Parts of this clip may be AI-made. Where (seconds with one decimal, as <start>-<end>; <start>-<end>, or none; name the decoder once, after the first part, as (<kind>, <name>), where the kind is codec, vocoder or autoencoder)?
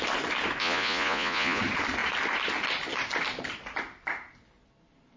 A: 0.6-1.6 (vocoder, Vocos)